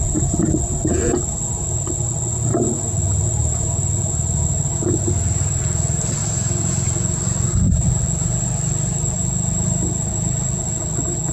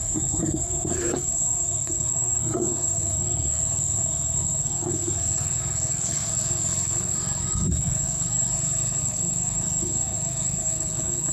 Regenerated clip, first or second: second